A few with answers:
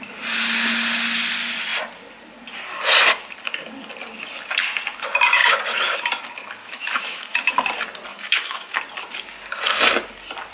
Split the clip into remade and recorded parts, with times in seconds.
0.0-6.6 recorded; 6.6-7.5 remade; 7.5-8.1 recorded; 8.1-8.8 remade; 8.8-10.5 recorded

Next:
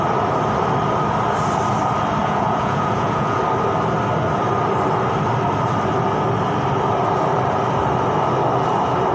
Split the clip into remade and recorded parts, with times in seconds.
0.0-2.2 recorded; 2.2-3.4 remade; 3.4-9.1 recorded